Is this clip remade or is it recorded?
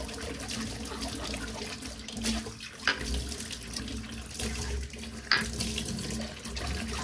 recorded